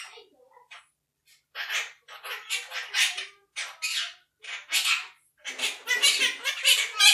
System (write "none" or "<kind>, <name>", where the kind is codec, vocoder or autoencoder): none